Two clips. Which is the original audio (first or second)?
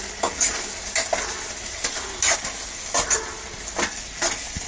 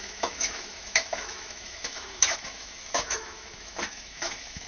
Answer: first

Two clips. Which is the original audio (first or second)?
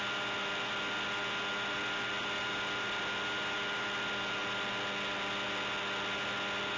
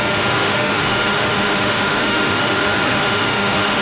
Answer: first